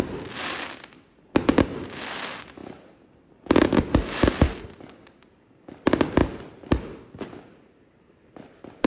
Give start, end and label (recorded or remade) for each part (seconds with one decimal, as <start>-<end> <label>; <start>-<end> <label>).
0.0-8.9 recorded